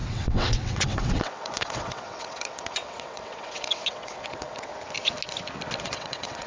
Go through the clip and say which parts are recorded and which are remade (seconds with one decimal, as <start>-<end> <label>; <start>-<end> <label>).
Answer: 0.0-4.7 remade; 4.7-5.8 recorded; 5.8-6.5 remade